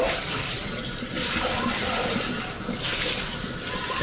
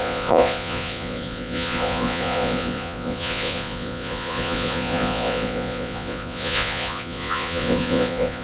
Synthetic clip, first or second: second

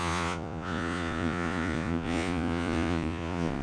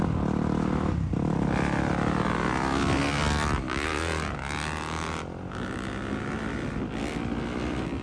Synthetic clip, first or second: first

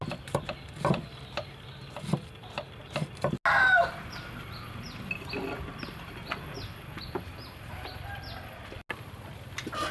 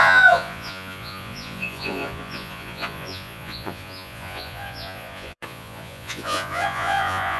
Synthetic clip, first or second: second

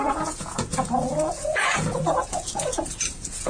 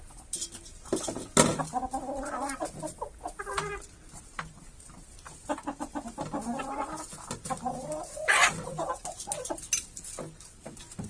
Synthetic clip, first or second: first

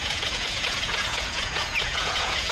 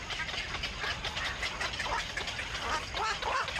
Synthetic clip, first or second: first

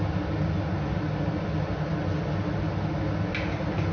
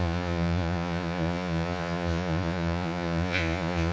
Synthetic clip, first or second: second